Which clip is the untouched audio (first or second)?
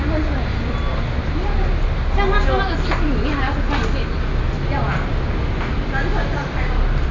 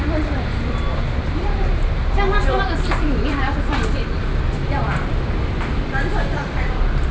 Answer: first